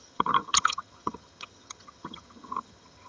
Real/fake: fake